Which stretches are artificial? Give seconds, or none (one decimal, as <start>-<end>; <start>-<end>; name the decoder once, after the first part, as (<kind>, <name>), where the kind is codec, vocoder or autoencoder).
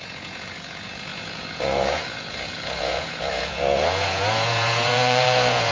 0.0-5.7 (vocoder, Vocos)